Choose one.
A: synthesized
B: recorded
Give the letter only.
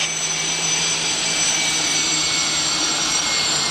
B